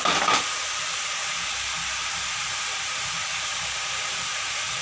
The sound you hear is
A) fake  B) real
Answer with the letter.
A